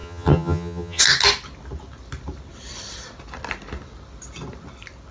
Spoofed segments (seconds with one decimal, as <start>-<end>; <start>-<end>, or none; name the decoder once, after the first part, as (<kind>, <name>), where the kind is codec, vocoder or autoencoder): 0.0-1.0 (vocoder, HiFi-GAN)

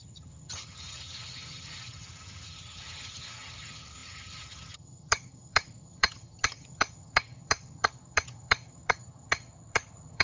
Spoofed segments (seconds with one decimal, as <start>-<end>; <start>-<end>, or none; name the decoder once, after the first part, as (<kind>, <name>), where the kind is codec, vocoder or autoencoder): 0.0-10.2 (vocoder, HiFi-GAN)

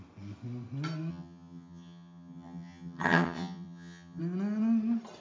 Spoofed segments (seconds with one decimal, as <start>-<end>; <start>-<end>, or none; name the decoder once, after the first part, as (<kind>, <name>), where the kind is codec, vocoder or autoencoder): 1.1-4.2 (vocoder, HiFi-GAN)